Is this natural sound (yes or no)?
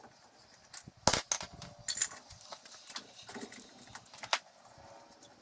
yes